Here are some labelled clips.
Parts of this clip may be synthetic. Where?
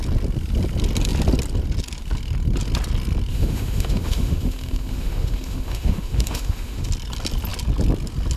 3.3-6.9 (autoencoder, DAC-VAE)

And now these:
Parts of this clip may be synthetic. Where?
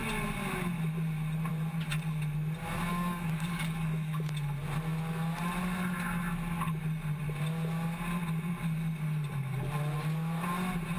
2.9-4.2 (codec, DAC)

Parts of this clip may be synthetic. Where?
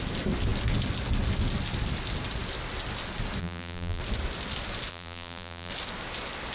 3.4-4.0 (vocoder, BigVGAN v2); 4.9-5.7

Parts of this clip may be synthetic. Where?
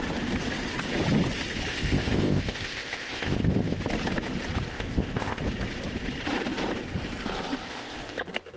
1.7-3.8 (codec, ZipCodec); 4.7-5.4; 7.7-8.2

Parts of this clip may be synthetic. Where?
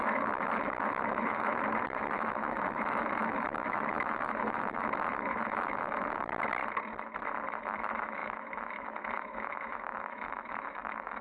0.0-6.6 (autoencoder, DAC-VAE); 7.6-11.2